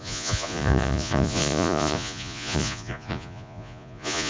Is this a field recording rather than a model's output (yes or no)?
no